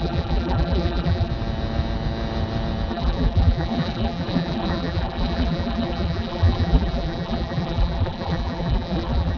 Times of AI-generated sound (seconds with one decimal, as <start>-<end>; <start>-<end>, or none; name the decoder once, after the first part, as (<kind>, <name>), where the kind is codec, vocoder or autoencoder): 0.0-1.3 (vocoder, BigVGAN v2); 2.9-9.4